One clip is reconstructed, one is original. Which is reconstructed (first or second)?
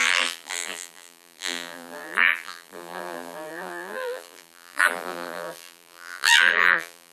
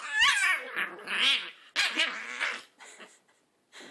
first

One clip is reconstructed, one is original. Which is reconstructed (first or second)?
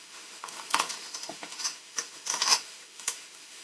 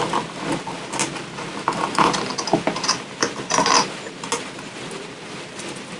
first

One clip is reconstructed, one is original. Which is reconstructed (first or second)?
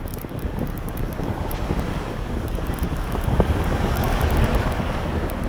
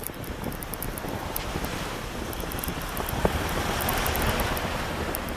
first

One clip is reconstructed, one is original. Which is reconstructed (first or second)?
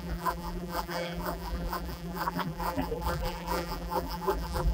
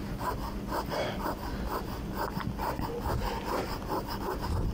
first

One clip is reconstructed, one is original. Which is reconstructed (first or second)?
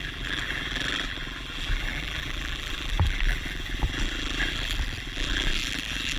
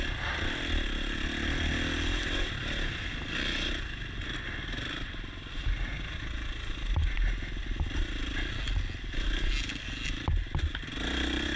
first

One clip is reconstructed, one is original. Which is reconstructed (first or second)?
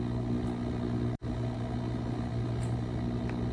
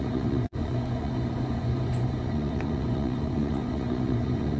second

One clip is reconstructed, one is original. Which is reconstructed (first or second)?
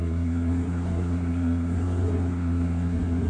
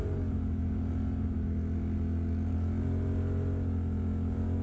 first